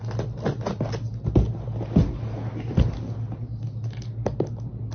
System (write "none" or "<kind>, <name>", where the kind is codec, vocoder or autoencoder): none